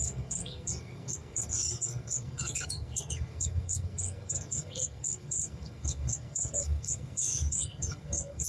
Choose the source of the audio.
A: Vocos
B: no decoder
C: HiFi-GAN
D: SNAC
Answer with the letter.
D